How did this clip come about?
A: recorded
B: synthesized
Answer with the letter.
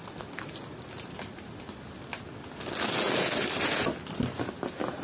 A